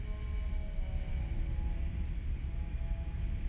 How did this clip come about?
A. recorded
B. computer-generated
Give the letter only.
A